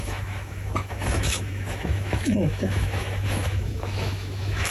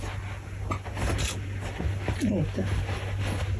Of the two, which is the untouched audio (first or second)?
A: second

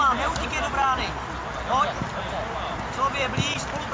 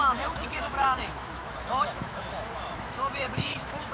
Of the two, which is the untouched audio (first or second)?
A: first